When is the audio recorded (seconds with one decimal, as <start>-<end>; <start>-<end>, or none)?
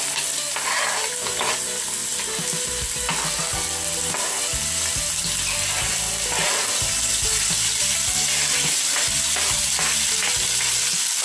0.0-11.2